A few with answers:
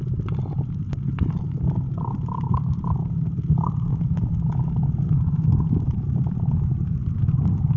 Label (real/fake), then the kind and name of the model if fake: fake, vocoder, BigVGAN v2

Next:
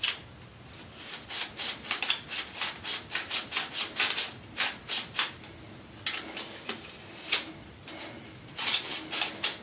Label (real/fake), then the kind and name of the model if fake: real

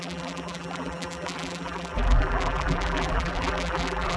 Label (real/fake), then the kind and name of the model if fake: fake, vocoder, BigVGAN v2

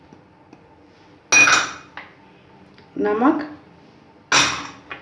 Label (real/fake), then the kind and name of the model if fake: real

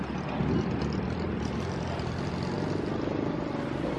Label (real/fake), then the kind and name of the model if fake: real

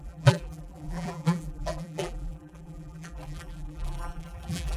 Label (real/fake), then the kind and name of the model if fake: fake, vocoder, BigVGAN v2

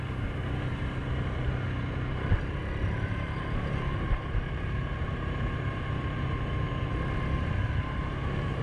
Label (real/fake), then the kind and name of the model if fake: fake, vocoder, BigVGAN v2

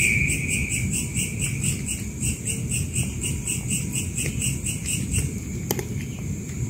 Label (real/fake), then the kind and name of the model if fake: real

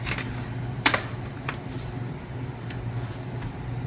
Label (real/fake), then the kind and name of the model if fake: fake, vocoder, BigVGAN v2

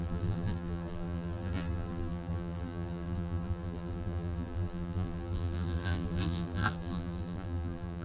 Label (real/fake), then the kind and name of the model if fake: fake, vocoder, BigVGAN v2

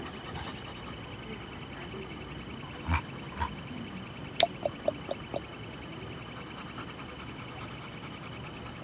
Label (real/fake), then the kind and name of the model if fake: real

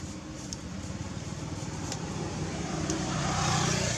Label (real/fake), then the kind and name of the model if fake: fake, vocoder, BigVGAN v2